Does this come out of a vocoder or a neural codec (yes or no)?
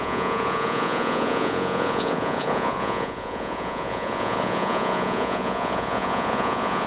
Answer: yes